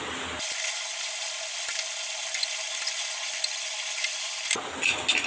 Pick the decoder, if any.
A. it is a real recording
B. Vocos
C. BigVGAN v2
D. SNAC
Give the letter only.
A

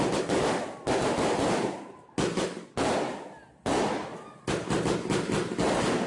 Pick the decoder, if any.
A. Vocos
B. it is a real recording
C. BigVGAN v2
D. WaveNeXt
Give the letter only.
B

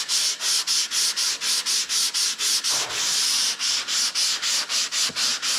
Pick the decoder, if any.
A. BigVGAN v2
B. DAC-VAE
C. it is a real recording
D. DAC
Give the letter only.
C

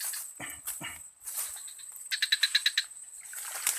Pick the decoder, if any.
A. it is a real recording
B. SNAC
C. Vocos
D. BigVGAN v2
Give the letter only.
A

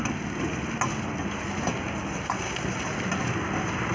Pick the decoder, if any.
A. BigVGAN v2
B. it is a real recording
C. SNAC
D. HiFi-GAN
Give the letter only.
B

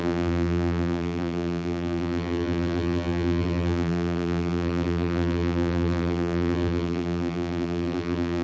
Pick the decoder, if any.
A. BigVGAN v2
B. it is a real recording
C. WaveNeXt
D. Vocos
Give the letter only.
A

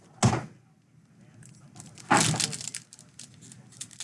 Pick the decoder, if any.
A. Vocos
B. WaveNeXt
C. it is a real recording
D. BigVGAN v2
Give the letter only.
C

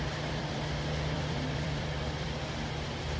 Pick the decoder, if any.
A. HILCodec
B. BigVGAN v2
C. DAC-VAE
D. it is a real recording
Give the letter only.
B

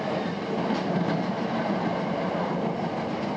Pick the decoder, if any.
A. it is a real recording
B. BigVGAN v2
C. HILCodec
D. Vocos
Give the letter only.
A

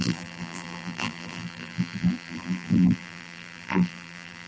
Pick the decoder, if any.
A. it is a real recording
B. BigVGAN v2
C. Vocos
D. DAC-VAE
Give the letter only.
B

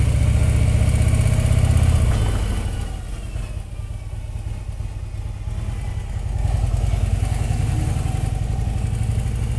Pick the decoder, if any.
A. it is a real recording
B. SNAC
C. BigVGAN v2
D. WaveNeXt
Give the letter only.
A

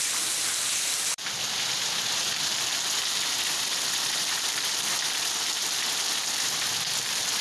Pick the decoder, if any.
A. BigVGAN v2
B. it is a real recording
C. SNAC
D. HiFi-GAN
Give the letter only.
A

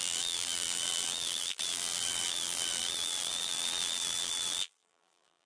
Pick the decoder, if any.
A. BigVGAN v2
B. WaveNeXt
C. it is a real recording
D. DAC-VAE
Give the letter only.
A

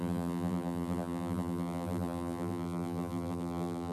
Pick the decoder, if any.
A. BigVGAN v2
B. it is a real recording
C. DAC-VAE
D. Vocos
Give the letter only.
A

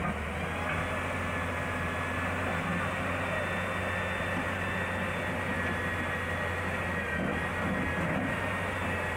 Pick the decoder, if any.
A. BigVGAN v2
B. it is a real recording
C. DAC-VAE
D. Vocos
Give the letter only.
B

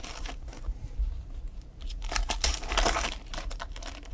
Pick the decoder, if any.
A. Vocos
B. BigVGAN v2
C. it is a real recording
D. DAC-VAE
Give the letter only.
B